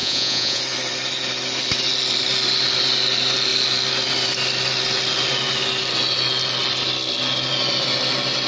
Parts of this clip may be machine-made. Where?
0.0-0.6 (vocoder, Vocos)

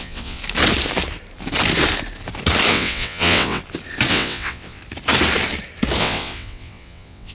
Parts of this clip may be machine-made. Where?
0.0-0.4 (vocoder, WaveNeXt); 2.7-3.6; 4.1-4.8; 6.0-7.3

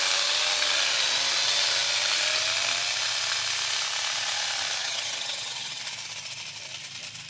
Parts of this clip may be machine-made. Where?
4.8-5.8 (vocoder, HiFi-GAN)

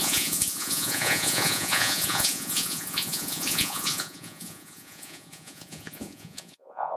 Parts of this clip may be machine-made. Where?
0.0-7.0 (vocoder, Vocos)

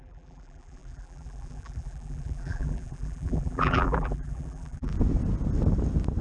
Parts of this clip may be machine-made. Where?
0.0-4.9 (vocoder, BigVGAN v2)